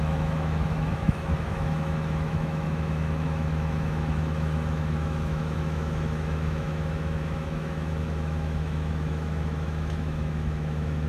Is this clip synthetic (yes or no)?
yes